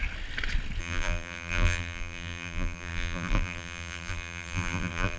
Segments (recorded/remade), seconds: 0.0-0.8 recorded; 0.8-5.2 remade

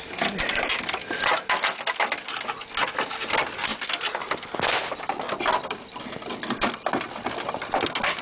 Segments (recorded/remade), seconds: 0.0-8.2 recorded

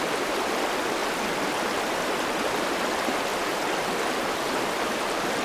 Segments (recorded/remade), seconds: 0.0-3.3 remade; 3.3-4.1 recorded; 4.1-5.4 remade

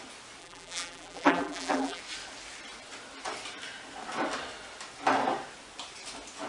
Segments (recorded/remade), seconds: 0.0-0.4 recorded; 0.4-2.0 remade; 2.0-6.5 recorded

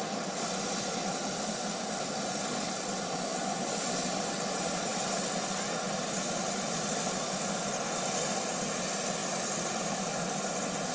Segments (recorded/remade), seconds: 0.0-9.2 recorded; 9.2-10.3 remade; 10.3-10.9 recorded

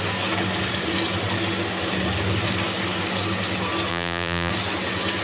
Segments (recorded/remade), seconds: 0.0-3.9 recorded; 3.9-4.5 remade; 4.5-5.2 recorded

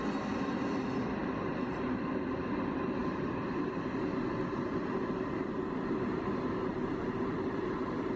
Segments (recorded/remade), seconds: 0.0-1.2 recorded; 1.2-2.0 remade; 2.0-8.2 recorded

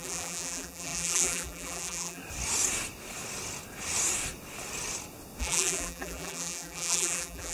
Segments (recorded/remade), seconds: 0.0-2.2 remade; 2.2-5.4 recorded; 5.4-7.5 remade